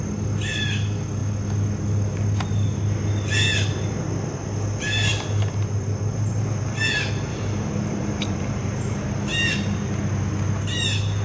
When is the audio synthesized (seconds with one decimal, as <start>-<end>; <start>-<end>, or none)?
7.3-8.7